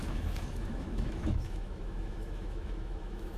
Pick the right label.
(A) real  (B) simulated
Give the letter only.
B